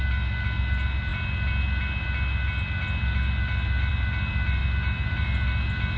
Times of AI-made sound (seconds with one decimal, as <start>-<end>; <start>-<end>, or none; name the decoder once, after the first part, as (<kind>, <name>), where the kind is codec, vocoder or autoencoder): none